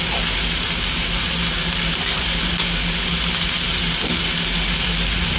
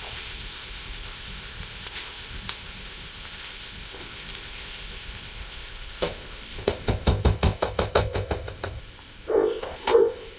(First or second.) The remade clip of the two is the second